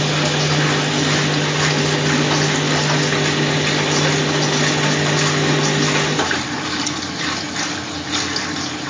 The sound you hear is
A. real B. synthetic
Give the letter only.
A